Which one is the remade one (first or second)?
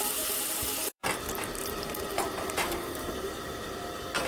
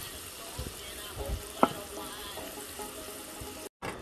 first